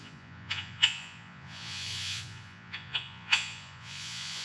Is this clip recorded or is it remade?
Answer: remade